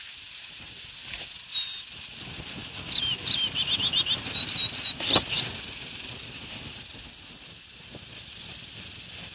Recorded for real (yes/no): yes